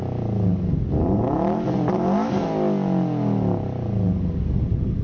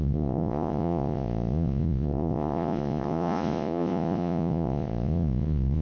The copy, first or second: second